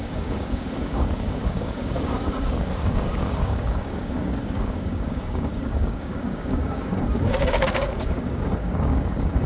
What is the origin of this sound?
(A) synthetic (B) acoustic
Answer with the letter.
A